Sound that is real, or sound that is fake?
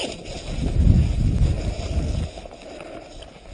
real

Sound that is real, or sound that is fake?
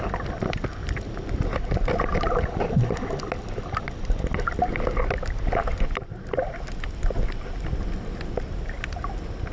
real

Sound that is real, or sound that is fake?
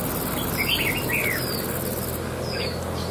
real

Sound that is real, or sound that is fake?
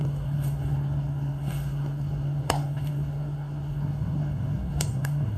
fake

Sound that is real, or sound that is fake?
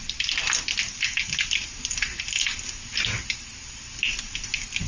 real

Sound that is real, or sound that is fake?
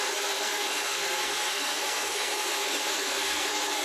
fake